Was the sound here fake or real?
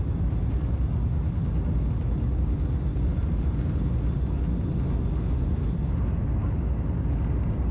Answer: real